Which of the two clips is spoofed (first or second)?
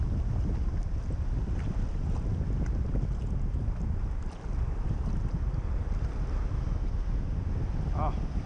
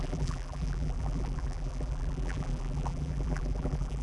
second